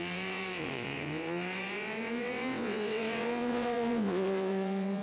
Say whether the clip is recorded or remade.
remade